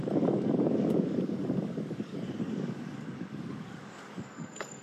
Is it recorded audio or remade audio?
remade